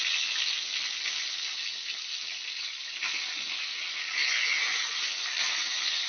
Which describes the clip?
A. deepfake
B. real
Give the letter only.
B